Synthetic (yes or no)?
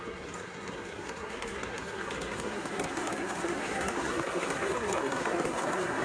yes